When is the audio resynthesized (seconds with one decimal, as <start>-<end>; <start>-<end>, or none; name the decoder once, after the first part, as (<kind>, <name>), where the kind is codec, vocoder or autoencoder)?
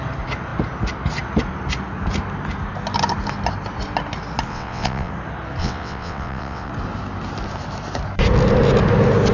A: 4.5-5.1 (vocoder, WaveNeXt); 5.6-6.7